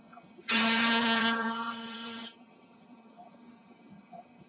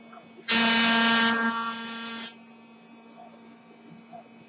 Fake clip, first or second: first